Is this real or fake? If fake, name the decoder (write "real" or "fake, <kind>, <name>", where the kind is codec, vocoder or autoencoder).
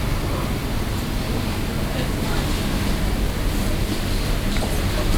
real